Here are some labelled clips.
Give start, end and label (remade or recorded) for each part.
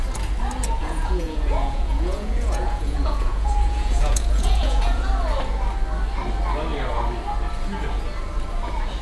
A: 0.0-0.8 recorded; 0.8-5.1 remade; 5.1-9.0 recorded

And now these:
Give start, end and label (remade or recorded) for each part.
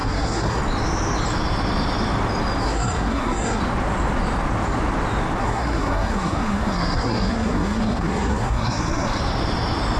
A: 0.0-0.6 remade; 0.6-2.6 recorded; 2.6-3.6 remade; 3.6-5.4 recorded; 5.4-9.2 remade; 9.2-10.0 recorded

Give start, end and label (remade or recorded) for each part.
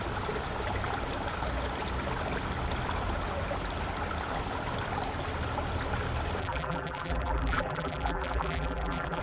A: 0.0-6.4 recorded; 6.4-9.2 remade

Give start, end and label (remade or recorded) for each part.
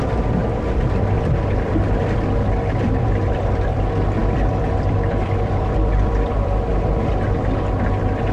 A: 0.0-0.4 recorded; 0.4-3.5 remade; 3.5-4.2 recorded; 4.2-7.1 remade; 7.1-8.3 recorded